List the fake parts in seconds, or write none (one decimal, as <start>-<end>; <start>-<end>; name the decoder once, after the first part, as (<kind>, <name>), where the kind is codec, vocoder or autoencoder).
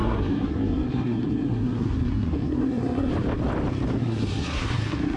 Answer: 0.0-3.1 (codec, SNAC); 4.0-5.2